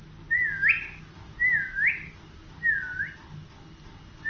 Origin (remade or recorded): recorded